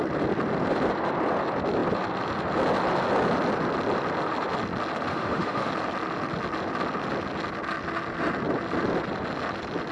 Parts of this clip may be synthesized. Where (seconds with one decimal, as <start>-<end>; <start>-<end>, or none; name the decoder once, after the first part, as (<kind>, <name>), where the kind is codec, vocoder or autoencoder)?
5.1-5.7 (autoencoder, DAC-VAE)